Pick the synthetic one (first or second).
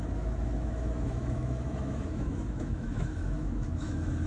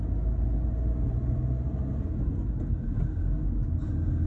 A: first